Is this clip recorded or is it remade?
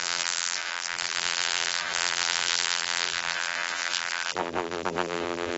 remade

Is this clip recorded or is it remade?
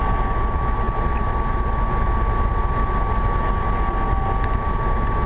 recorded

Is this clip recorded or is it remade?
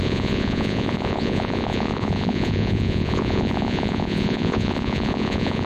remade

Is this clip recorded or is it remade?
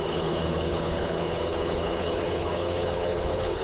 remade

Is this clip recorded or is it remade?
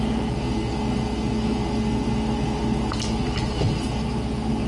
recorded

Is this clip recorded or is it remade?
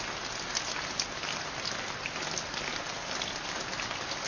recorded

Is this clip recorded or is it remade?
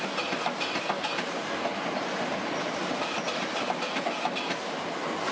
recorded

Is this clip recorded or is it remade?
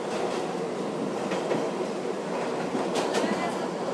recorded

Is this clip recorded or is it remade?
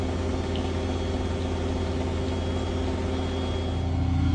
recorded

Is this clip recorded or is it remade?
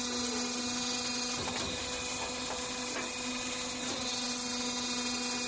recorded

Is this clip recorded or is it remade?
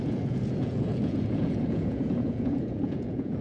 remade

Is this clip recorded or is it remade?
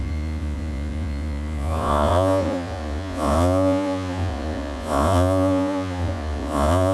remade